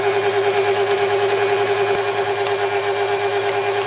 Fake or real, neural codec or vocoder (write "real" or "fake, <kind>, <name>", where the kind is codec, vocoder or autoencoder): real